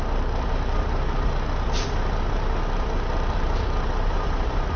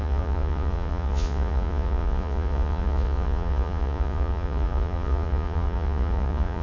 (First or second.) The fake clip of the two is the second